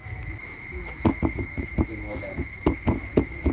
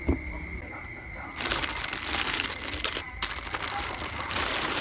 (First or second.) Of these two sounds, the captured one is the second